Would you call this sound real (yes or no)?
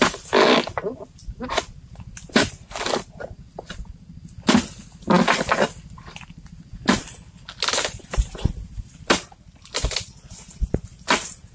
yes